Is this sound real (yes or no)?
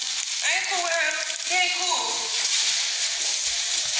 yes